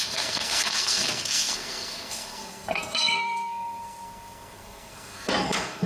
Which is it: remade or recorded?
remade